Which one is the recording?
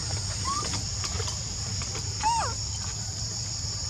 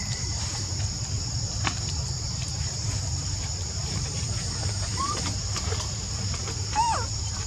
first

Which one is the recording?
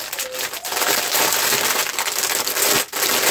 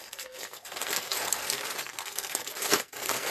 first